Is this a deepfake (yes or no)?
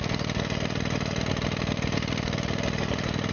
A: no